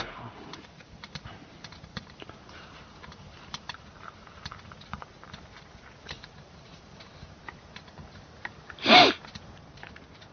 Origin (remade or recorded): remade